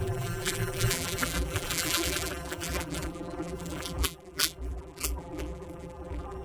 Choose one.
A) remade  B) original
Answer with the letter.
A